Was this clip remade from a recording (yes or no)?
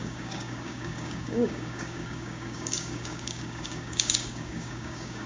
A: yes